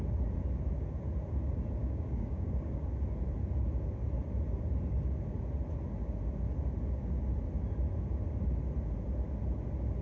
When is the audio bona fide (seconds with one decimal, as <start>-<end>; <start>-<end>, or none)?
0.0-1.8; 2.8-10.0